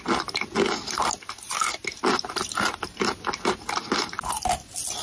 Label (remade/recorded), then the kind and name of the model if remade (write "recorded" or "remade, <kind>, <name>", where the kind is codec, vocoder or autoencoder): recorded